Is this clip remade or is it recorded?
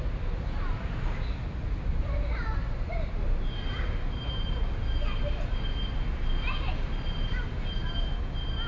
recorded